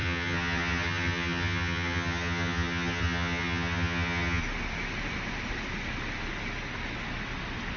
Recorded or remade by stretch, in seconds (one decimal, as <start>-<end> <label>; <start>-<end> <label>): 0.0-4.4 remade; 4.4-7.8 recorded